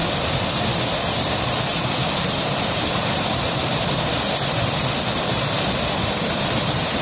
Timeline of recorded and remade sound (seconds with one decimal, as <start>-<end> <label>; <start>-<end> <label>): 0.0-7.0 remade